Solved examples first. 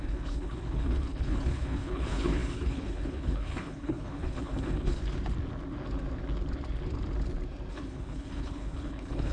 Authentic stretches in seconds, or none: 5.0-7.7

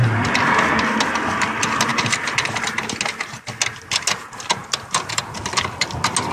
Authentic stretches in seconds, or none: 0.0-1.9; 2.5-4.6; 5.2-6.3

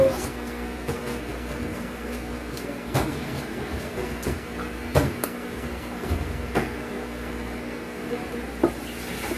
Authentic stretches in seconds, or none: 8.2-9.4